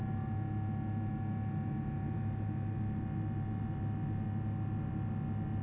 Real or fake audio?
real